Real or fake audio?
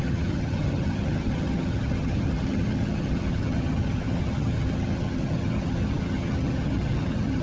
fake